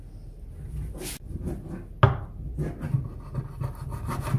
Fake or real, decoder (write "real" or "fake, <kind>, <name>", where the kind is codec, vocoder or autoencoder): real